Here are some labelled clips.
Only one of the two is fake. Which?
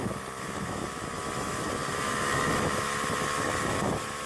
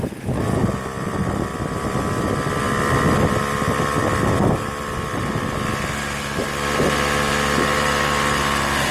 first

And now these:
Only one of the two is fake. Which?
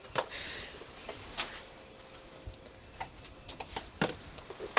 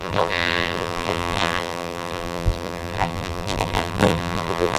second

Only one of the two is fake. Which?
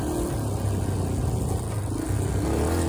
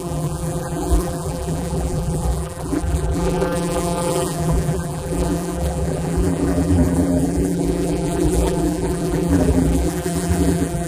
second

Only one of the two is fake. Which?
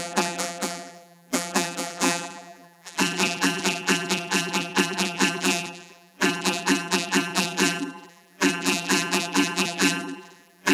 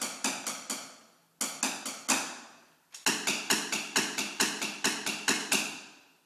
first